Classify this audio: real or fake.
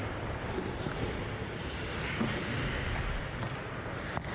real